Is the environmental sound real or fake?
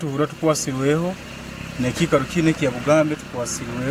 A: real